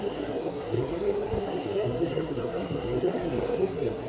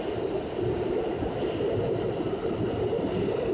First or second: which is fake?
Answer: first